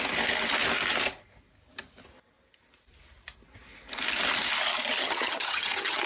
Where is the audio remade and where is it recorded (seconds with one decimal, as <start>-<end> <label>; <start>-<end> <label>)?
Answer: 0.0-5.0 recorded; 5.0-6.0 remade